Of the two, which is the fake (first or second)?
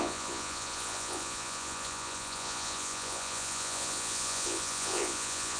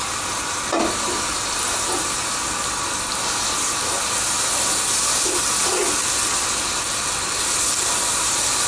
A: first